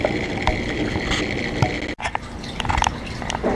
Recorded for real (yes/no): yes